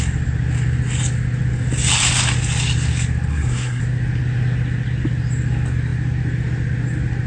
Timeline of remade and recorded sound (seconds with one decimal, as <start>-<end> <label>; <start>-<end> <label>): 0.0-3.3 recorded; 3.3-3.8 remade; 3.8-7.3 recorded